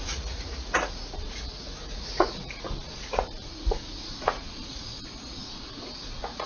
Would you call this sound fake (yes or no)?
yes